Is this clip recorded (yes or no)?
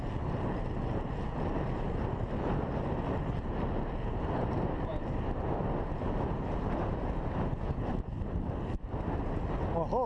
yes